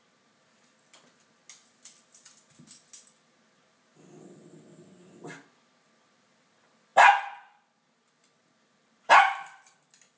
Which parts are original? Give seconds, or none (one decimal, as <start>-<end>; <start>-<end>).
0.0-10.2